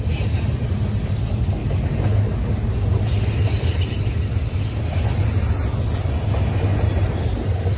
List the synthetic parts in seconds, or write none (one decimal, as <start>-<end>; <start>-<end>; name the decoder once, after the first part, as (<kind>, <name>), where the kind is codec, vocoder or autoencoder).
none